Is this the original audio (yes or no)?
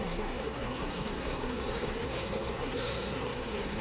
no